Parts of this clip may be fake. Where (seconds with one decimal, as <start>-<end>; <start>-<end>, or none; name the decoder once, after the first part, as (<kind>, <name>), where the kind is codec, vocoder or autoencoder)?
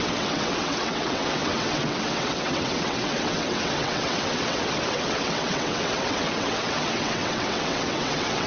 0.0-8.5 (vocoder, WaveNeXt)